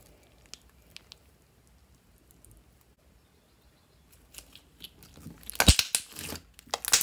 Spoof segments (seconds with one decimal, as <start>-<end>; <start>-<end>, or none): none